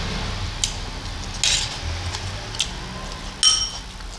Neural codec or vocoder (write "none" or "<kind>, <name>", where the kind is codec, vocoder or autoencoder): none